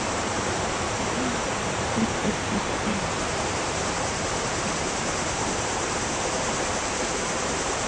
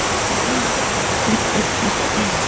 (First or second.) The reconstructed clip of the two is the first